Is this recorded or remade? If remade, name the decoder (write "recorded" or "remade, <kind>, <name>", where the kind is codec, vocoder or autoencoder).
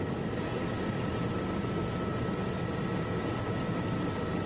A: recorded